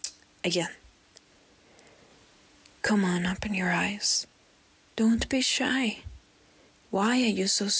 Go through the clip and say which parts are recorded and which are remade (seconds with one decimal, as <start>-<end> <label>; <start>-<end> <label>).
0.0-0.5 recorded; 0.5-1.5 remade; 1.5-2.1 recorded; 2.1-2.9 remade; 2.9-4.3 recorded; 4.3-6.3 remade; 6.3-7.8 recorded